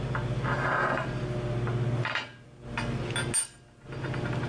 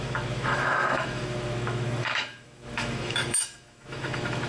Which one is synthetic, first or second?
second